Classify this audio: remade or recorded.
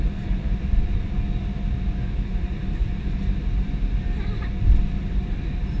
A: recorded